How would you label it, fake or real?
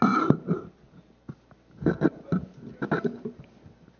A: real